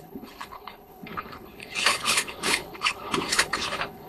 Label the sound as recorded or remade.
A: remade